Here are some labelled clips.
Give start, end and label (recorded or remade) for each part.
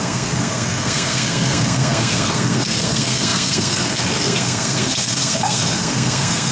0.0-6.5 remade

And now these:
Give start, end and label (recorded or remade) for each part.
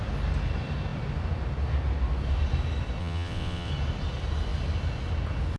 0.0-3.0 recorded; 3.0-3.7 remade; 3.7-5.6 recorded